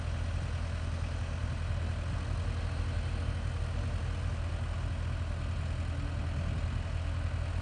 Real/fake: real